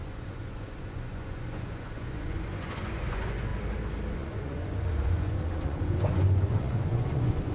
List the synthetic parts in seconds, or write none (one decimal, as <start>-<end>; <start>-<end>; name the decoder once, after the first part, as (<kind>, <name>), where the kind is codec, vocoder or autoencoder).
0.0-3.5 (vocoder, Vocos); 4.1-7.5